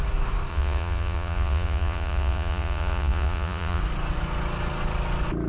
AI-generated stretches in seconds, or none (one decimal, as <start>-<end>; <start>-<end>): 0.5-3.8